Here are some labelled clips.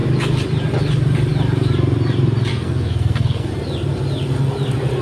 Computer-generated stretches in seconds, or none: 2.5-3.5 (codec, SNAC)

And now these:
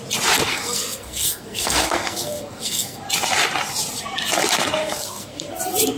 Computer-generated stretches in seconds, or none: 0.5-3.0 (codec, SNAC); 4.8-5.6

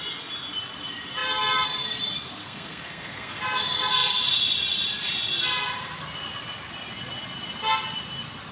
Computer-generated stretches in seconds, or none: 2.4-3.4 (codec, SNAC)